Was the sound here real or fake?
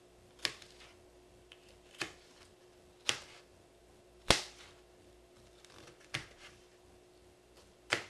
real